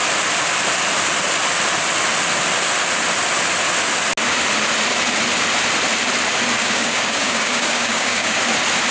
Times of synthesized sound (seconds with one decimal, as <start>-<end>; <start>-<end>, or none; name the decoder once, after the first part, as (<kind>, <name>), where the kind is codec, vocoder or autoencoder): 6.6-8.4 (codec, DAC)